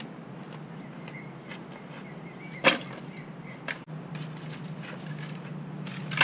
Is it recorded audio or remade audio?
recorded